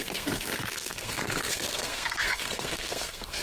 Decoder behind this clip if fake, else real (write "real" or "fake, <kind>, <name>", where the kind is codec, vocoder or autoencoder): fake, codec, SNAC